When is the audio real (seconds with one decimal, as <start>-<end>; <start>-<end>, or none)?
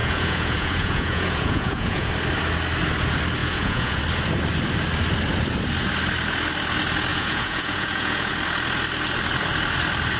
2.1-3.4; 4.0-7.1; 8.3-10.2